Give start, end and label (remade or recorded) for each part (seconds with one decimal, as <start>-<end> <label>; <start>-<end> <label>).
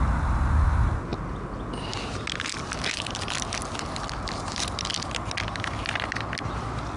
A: 0.0-7.0 recorded